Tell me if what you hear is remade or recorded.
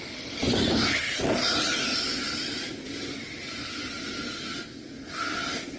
recorded